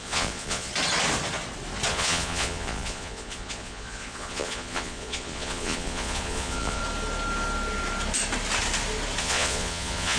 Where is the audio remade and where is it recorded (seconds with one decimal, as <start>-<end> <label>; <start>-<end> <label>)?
0.0-0.7 remade; 0.7-1.9 recorded; 1.9-6.8 remade; 6.8-9.2 recorded; 9.2-10.2 remade